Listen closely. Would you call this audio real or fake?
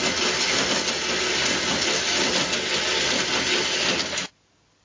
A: real